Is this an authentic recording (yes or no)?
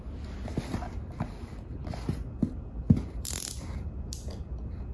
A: yes